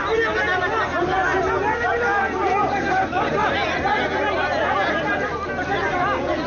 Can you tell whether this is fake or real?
real